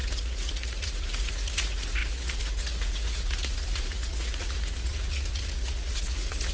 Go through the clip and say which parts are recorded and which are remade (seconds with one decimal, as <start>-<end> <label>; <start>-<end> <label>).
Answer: 0.0-6.5 remade